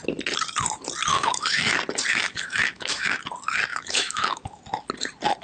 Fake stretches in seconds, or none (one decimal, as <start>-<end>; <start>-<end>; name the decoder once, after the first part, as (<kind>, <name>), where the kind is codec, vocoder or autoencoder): 1.1-1.7 (autoencoder, DAC-VAE); 2.1-3.2; 3.7-4.6